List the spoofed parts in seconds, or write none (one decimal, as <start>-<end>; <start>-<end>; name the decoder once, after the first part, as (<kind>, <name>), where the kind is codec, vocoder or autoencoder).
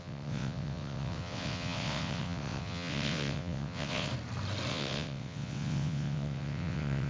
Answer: 0.0-4.1 (vocoder, WaveNeXt); 4.7-7.1